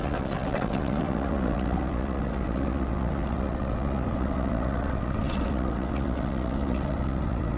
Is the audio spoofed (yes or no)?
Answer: yes